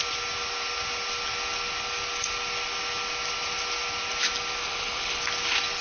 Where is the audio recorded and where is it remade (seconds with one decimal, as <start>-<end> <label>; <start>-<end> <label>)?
0.0-4.6 recorded; 4.6-5.2 remade; 5.2-5.8 recorded